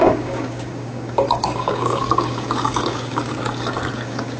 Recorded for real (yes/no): no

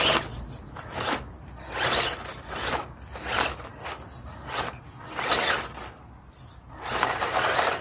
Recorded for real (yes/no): yes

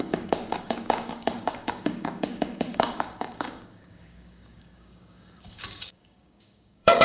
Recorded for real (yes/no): no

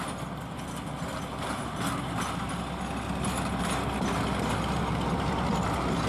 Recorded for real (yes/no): yes